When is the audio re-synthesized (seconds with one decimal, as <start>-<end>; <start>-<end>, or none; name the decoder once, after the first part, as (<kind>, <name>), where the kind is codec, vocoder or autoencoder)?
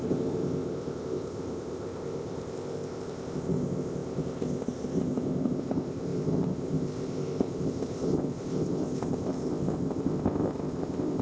0.0-11.2 (codec, ZipCodec)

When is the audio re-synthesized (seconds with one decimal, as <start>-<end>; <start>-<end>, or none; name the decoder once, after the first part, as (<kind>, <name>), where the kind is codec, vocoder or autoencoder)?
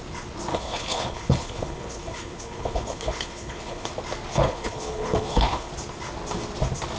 0.5-3.9 (codec, HILCodec); 4.3-5.7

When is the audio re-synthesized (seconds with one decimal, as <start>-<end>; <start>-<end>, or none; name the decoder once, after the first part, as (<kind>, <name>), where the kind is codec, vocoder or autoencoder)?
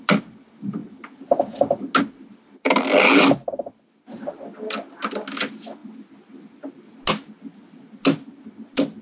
none